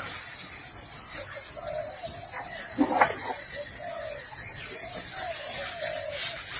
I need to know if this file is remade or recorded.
recorded